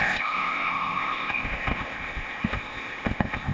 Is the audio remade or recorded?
remade